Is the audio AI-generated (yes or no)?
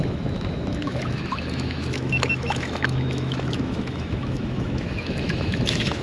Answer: yes